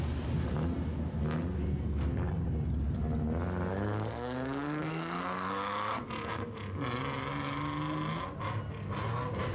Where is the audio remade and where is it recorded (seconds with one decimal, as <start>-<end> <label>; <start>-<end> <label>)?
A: 0.0-1.7 recorded; 1.7-2.3 remade; 2.3-3.7 recorded; 3.7-6.0 remade; 6.0-9.5 recorded